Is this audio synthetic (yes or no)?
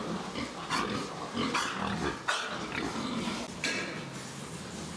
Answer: no